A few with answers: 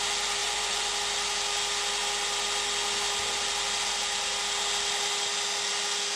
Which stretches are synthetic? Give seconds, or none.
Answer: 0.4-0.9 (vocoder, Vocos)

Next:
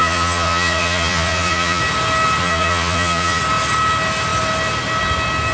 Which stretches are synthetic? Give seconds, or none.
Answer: 0.0-1.8 (vocoder, Vocos); 2.4-3.4

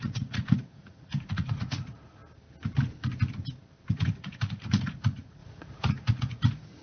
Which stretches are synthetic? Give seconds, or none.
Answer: 0.0-2.2 (vocoder, Vocos); 3.9-6.8

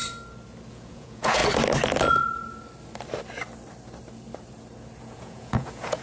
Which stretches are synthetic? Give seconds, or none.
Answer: 0.7-1.4 (vocoder, Vocos); 5.0-6.0

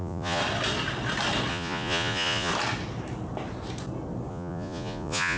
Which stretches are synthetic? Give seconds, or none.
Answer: 0.0-0.4 (vocoder, Vocos); 1.5-2.5; 4.3-5.4